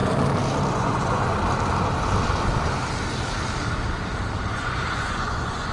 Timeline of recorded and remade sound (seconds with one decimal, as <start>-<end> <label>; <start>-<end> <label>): 0.0-0.7 recorded; 0.7-1.3 remade; 1.3-4.5 recorded; 4.5-5.7 remade